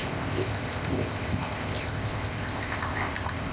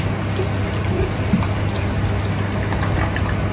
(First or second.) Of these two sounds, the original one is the second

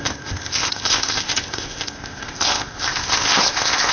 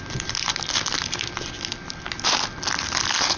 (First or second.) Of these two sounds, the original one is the second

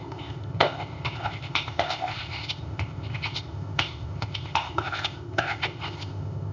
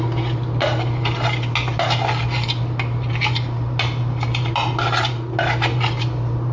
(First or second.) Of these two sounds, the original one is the second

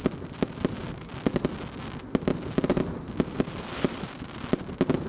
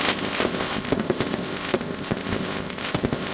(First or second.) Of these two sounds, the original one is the first